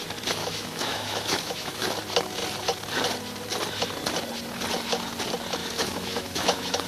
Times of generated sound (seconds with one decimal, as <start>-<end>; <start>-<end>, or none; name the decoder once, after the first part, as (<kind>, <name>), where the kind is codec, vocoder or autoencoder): 0.4-1.9 (autoencoder, DAC-VAE); 5.6-6.9